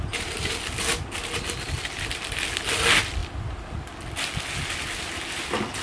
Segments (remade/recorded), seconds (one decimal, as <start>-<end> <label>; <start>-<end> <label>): 0.0-5.8 recorded